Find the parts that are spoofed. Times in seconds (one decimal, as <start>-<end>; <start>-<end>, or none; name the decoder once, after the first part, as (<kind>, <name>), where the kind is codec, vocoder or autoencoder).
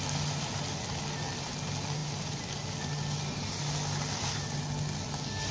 none